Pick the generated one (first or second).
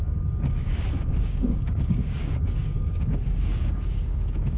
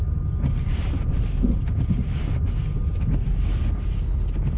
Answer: first